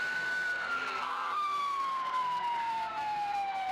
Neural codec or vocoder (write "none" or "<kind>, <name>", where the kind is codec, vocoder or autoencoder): codec, SNAC